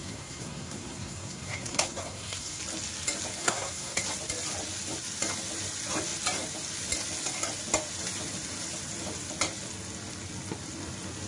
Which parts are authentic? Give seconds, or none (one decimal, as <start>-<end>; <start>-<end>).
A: 2.6-3.4; 4.0-11.3